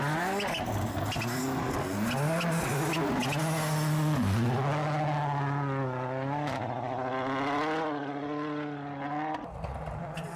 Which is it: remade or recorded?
recorded